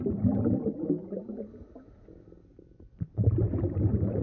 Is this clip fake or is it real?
real